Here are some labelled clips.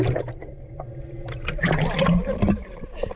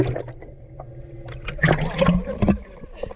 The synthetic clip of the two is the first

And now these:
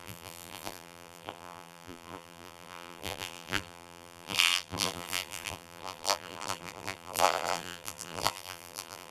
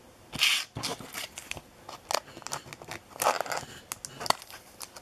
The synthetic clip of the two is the first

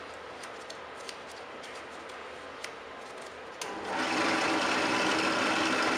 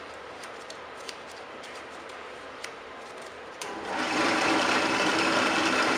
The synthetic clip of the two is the second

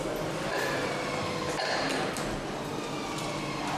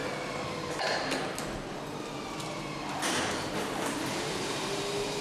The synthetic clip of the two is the second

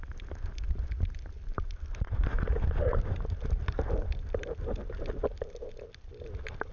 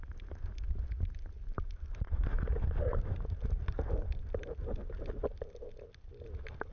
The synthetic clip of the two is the first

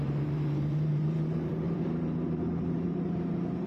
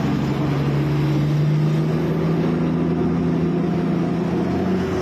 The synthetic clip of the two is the first